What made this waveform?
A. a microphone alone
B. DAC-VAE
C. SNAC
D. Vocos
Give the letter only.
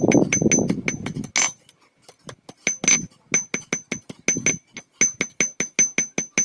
A